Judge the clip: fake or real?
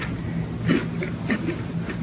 real